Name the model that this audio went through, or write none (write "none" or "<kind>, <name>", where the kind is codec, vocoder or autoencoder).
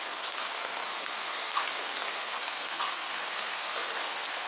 codec, SNAC